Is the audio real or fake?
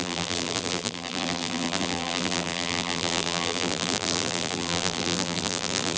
fake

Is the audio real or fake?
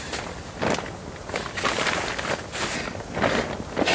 real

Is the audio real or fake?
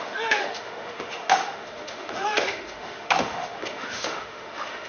fake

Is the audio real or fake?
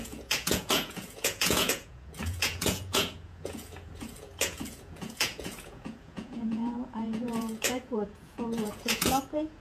fake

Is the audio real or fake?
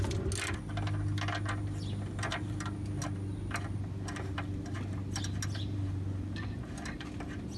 real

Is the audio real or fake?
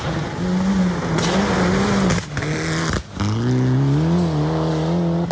real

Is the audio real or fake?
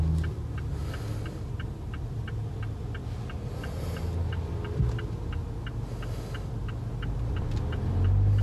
real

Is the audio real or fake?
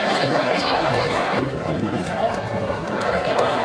fake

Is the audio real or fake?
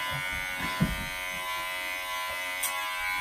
real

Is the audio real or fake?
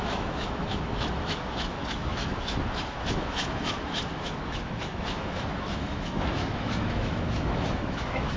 fake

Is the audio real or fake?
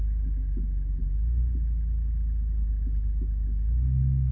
real